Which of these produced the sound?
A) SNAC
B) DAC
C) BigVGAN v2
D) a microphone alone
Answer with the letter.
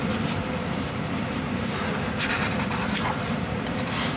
C